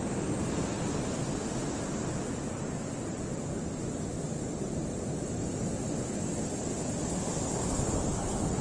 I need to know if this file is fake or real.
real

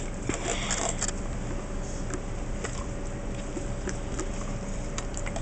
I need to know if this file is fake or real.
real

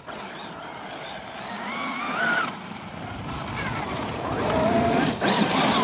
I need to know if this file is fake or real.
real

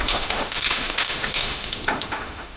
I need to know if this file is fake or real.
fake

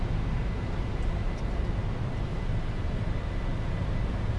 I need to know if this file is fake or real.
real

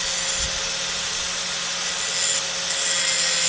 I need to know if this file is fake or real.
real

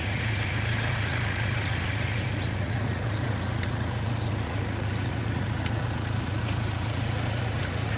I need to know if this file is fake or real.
fake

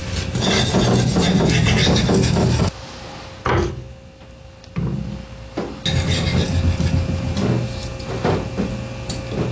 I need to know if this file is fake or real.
real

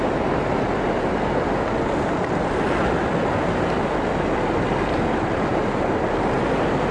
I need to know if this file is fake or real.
real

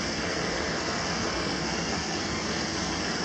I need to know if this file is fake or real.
fake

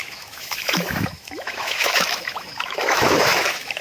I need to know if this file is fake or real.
fake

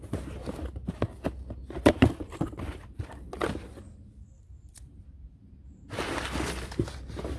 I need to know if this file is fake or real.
real